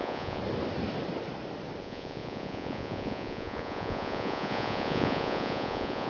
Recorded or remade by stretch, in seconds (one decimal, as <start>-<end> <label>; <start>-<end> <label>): 0.0-0.4 remade; 0.4-1.8 recorded; 1.8-6.1 remade